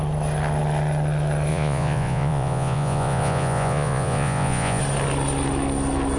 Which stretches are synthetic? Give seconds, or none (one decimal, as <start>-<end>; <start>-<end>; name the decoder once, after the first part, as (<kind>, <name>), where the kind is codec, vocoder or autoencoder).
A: 1.5-4.8 (vocoder, Vocos)